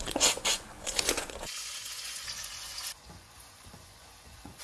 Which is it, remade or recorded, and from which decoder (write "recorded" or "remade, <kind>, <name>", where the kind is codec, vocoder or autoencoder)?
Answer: remade, vocoder, Vocos